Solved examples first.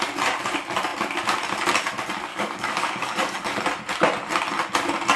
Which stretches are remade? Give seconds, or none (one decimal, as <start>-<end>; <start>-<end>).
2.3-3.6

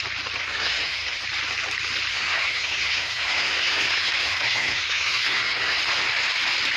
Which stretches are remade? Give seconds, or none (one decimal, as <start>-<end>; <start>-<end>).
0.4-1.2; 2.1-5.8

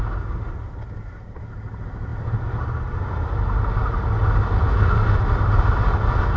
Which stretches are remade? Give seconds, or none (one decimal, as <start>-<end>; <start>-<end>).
none

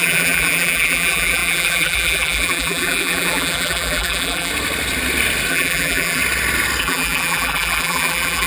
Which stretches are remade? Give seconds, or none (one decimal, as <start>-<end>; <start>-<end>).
0.0-4.5; 5.5-6.2; 6.8-8.5

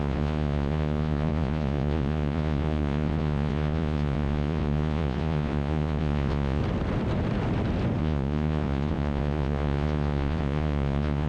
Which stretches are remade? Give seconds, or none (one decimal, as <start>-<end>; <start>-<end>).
0.0-6.6; 8.0-11.3

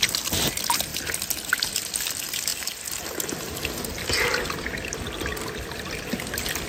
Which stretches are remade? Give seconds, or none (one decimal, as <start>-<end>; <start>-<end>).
none

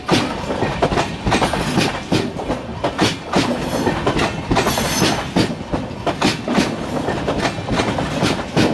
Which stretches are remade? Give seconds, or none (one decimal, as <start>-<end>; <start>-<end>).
none